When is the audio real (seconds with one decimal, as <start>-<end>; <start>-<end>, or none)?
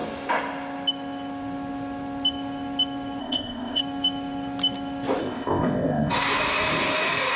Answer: 0.0-3.2; 3.8-5.2; 6.1-7.4